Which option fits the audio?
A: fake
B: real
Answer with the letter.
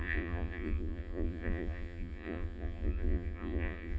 A